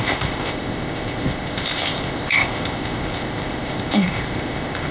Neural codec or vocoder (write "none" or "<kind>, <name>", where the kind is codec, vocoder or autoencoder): codec, ZipCodec